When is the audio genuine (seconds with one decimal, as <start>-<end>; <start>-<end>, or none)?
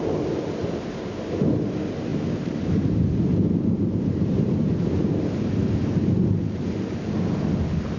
0.0-2.1; 5.3-8.0